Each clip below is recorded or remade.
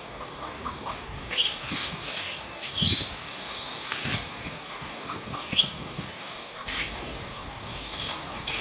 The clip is remade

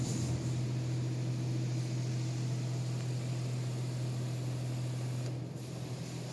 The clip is recorded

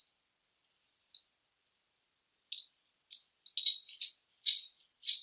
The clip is recorded